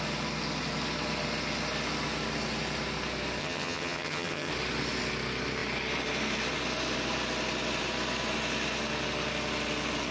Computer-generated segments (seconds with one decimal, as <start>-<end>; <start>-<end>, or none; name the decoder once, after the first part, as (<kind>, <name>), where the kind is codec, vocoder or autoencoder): 3.4-4.5 (vocoder, HiFi-GAN)